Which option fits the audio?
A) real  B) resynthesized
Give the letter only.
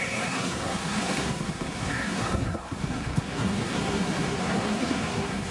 B